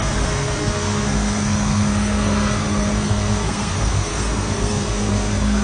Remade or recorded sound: remade